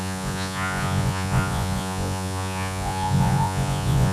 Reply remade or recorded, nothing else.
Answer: remade